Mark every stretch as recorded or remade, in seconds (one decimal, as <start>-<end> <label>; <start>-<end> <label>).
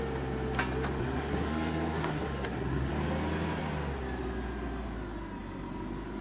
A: 0.0-1.0 recorded; 1.0-2.9 remade; 2.9-6.2 recorded